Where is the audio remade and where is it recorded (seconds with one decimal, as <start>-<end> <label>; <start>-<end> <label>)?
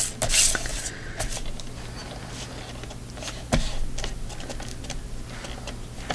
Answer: 0.0-0.7 recorded; 0.7-1.2 remade; 1.2-6.1 recorded